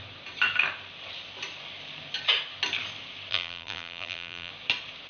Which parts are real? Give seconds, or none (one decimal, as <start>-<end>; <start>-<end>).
0.0-3.3; 4.5-5.1